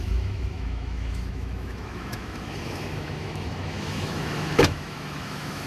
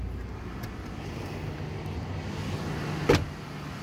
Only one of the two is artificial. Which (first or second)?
first